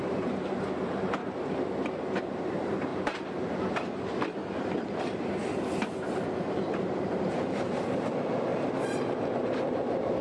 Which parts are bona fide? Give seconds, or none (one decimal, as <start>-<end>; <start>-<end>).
1.2-2.2; 2.9-3.9; 4.4-6.3; 8.5-9.3